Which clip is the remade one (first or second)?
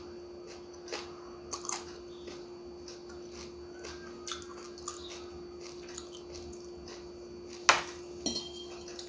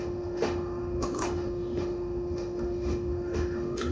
second